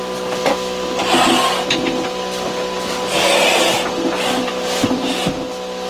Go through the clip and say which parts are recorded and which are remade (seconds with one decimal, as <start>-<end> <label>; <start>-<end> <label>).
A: 0.0-5.9 recorded